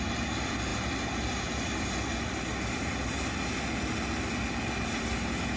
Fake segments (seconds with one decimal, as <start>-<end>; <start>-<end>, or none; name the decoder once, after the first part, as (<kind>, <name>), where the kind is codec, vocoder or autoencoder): none